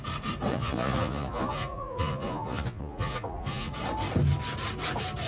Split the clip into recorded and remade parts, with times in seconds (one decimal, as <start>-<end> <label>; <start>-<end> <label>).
0.0-0.5 recorded; 0.5-3.7 remade; 3.7-5.3 recorded